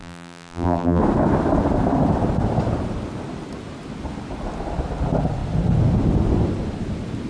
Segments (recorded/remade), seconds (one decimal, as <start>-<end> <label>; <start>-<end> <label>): 0.0-1.0 remade; 1.0-7.3 recorded